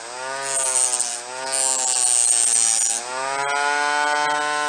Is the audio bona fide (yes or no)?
yes